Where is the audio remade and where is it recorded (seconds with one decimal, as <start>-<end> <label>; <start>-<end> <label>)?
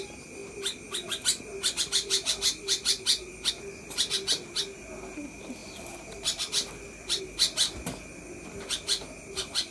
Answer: 0.0-5.6 recorded; 5.6-7.2 remade; 7.2-9.7 recorded